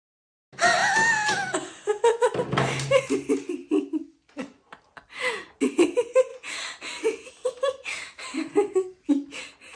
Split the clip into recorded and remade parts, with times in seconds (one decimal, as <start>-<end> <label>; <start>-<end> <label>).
0.0-9.7 recorded